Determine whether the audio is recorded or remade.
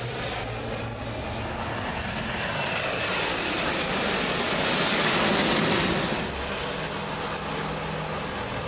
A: recorded